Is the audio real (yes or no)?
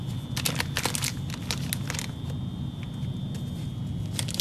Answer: yes